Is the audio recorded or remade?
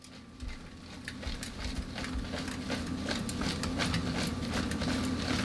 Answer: recorded